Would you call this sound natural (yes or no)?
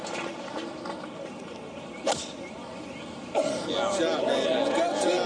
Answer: yes